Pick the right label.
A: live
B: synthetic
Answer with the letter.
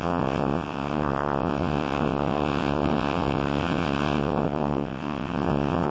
B